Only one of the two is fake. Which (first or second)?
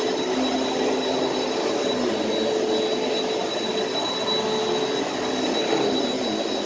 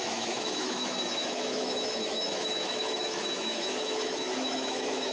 second